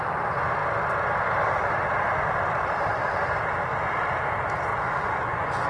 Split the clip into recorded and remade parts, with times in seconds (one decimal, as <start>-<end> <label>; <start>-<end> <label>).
0.0-4.7 recorded; 4.7-5.7 remade

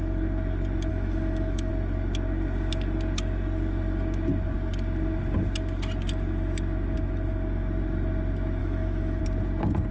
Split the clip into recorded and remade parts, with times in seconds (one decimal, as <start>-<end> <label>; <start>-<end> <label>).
0.0-0.9 recorded; 0.9-1.7 remade; 1.7-8.6 recorded; 8.6-9.2 remade; 9.2-9.9 recorded

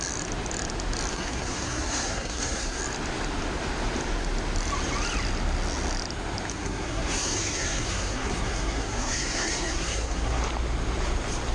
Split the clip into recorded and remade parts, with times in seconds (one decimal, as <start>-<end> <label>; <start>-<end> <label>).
0.0-1.1 recorded; 1.1-2.8 remade; 2.8-6.5 recorded; 6.5-10.4 remade; 10.4-11.5 recorded

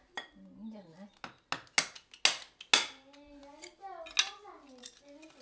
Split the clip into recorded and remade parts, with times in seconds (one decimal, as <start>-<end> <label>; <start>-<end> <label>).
0.0-5.4 recorded

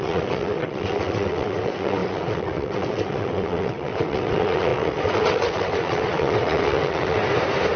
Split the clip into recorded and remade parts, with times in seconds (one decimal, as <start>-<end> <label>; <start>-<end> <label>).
0.0-7.2 remade; 7.2-7.8 recorded

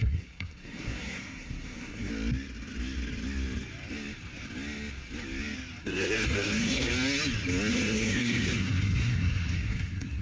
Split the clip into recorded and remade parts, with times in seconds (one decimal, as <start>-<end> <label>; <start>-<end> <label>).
0.0-2.1 remade; 2.1-5.8 recorded; 5.8-6.9 remade; 6.9-7.7 recorded; 7.7-10.2 remade